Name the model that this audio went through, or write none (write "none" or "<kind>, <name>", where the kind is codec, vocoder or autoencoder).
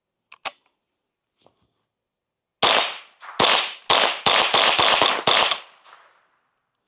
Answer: none